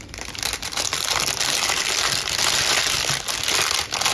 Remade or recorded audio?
recorded